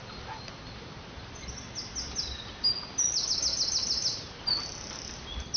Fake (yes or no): no